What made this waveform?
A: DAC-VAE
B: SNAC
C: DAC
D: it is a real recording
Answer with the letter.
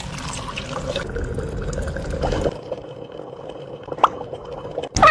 D